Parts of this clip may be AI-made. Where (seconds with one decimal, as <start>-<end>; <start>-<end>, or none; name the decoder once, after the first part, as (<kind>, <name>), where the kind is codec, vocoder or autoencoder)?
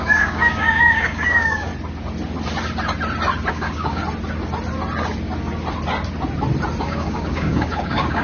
0.0-1.7 (codec, DAC); 3.5-4.0; 6.8-8.2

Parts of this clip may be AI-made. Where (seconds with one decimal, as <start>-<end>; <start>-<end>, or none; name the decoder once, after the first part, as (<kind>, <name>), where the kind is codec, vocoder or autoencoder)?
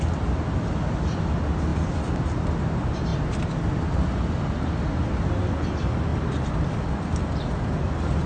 none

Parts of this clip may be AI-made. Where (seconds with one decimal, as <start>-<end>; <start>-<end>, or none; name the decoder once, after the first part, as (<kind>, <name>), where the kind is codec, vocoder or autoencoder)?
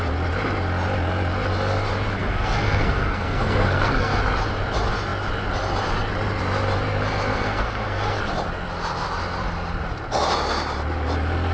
2.2-4.2 (codec, SNAC); 7.3-8.2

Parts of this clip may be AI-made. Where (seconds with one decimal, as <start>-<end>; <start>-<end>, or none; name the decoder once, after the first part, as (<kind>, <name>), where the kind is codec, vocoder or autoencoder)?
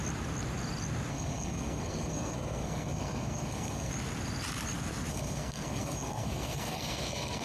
1.1-3.9 (codec, SNAC); 5.1-7.4